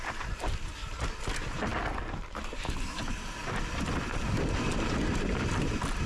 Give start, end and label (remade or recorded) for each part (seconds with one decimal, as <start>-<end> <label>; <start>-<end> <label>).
0.0-6.1 recorded